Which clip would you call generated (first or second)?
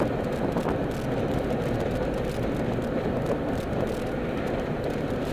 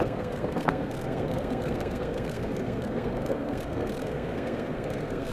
second